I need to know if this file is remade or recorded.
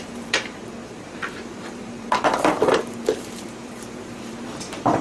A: remade